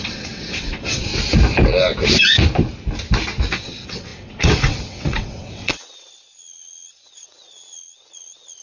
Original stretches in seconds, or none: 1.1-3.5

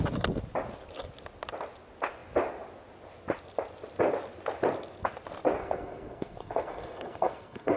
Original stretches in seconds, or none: 0.0-5.6

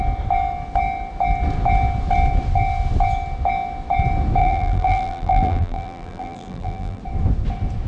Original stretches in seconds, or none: 0.0-4.4; 7.0-7.9

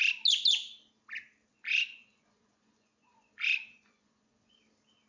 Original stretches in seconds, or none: 0.0-1.5; 4.6-5.1

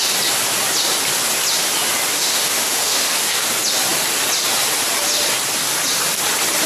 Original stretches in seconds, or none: 0.0-2.1; 3.5-6.7

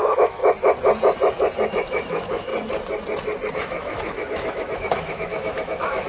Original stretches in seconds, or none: 0.4-1.7; 2.5-3.5